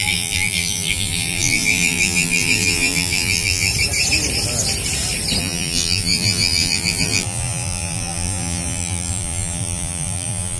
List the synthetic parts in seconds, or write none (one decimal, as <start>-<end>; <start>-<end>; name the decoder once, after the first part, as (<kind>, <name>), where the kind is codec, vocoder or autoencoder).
0.0-3.7 (vocoder, BigVGAN v2); 5.4-10.6